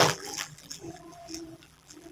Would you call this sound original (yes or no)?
no